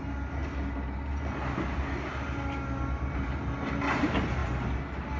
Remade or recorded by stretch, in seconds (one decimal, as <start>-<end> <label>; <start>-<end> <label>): 0.0-5.2 recorded